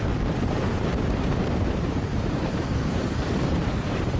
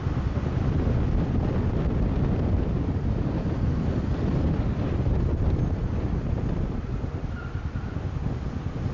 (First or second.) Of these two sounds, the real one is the second